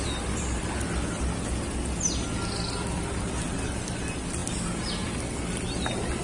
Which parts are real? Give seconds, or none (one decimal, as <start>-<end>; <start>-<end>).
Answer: 0.0-6.2